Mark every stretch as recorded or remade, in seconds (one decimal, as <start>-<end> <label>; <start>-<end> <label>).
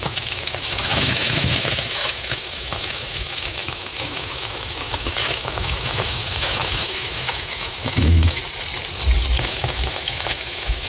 0.0-8.4 remade; 8.4-9.4 recorded; 9.4-10.9 remade